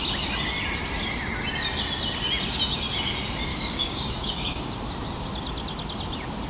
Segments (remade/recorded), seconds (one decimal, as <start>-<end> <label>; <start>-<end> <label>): 0.0-3.5 recorded; 3.5-4.6 remade; 4.6-6.5 recorded